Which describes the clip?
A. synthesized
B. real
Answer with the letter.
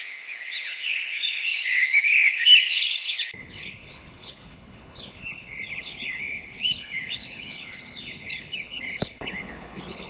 A